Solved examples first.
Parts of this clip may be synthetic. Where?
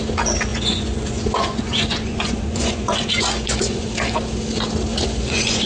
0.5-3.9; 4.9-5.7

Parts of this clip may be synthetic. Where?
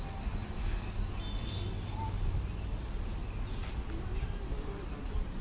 none